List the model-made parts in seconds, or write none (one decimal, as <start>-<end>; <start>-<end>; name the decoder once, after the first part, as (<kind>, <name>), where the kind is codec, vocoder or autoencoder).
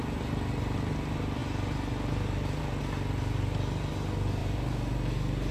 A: 4.4-5.5 (vocoder, BigVGAN v2)